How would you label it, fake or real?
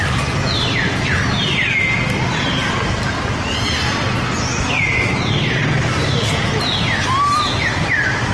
real